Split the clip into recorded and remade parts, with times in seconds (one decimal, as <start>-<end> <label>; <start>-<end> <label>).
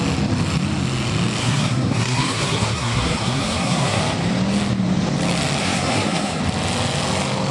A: 0.0-1.4 recorded; 1.4-4.0 remade; 4.0-5.6 recorded; 5.6-6.4 remade; 6.4-7.5 recorded